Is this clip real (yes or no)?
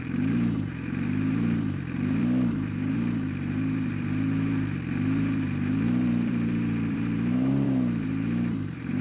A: no